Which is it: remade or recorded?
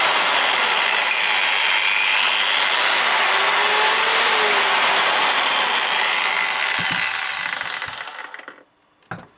recorded